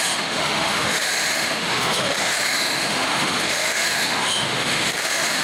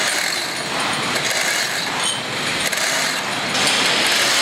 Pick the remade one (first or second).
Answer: first